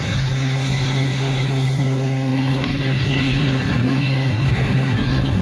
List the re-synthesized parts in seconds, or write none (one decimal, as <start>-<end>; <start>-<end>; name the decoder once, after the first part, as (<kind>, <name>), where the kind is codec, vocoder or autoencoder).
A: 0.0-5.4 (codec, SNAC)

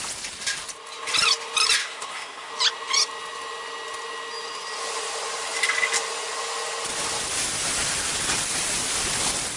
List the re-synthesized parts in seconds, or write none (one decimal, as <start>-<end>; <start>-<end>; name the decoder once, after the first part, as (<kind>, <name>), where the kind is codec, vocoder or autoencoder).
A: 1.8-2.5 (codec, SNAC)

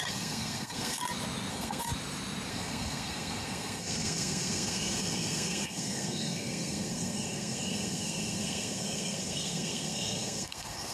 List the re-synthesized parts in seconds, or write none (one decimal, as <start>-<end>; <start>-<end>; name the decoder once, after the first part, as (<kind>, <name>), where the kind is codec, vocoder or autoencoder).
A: 0.0-1.0 (codec, SNAC); 1.5-1.9; 2.5-10.9

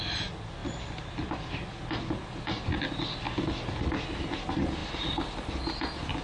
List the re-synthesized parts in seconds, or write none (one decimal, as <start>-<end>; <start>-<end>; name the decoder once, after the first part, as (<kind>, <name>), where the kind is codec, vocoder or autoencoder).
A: none

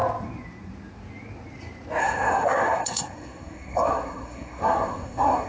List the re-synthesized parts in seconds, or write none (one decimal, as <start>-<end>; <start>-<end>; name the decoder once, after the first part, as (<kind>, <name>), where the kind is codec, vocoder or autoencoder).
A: 2.0-5.5 (codec, SNAC)

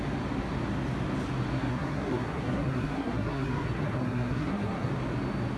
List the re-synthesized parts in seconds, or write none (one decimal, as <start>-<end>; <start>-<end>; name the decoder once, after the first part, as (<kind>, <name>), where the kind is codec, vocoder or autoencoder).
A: 1.7-4.9 (codec, SNAC)

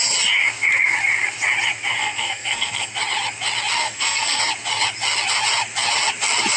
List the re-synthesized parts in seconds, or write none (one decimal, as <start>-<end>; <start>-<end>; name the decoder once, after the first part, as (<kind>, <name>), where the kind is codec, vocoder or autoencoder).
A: 2.0-2.9 (codec, SNAC); 3.8-4.4